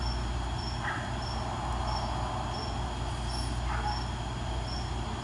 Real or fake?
real